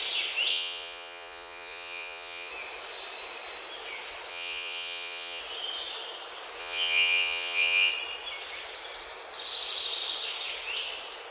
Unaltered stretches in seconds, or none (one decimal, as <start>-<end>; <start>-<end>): 0.0-0.5; 2.5-4.3; 5.4-6.6; 7.9-11.3